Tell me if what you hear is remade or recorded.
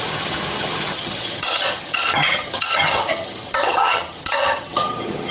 remade